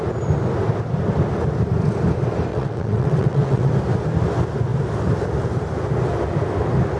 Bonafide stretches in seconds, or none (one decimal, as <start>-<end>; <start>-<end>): 0.0-2.5; 3.7-7.0